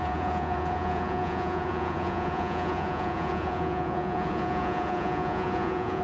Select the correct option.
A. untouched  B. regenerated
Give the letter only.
B